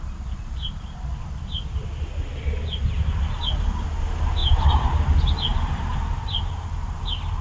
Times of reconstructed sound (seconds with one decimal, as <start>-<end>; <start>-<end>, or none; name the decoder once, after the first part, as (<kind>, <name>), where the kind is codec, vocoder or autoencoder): 4.4-5.0 (vocoder, BigVGAN v2); 5.5-6.4